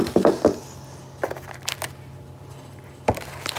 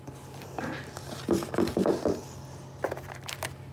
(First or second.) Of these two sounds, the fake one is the second